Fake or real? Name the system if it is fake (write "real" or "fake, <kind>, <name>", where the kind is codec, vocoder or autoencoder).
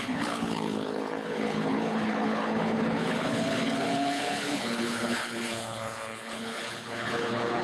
fake, codec, HILCodec